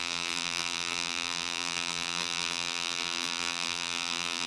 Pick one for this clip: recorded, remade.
remade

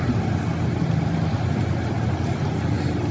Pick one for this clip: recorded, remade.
recorded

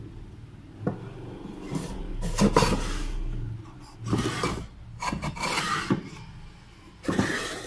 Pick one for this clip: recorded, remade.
recorded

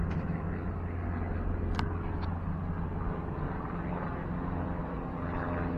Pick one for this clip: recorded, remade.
recorded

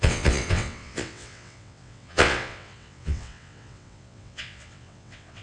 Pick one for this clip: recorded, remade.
remade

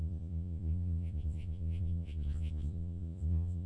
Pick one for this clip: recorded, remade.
remade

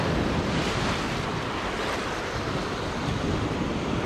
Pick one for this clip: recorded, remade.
recorded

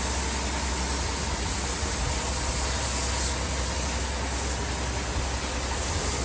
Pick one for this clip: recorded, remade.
recorded